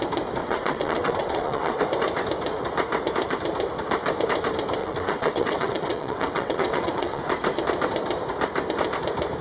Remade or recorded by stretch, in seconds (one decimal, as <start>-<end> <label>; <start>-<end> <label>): 0.0-0.4 recorded; 0.4-1.8 remade; 1.8-4.8 recorded; 4.8-7.2 remade; 7.2-9.4 recorded